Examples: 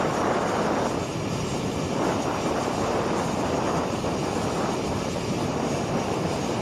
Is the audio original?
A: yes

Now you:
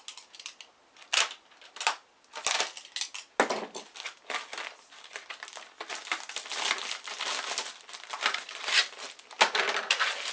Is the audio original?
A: yes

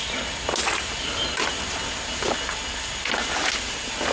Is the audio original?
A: yes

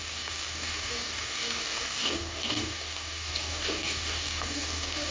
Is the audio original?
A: no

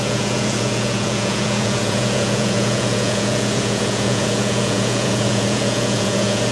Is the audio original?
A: no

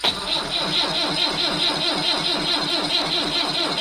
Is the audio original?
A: yes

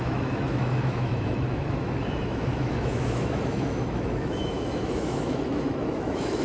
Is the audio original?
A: no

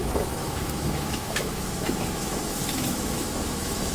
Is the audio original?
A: no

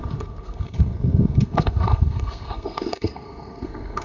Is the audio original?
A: no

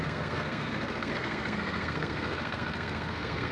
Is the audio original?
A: no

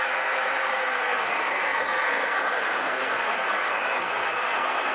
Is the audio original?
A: no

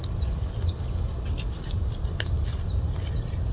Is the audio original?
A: yes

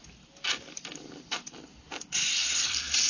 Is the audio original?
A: yes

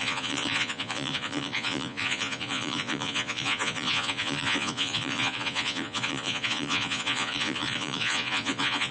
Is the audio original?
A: no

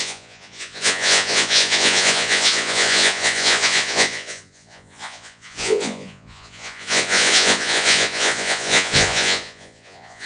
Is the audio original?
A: no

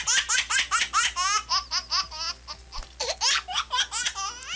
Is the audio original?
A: yes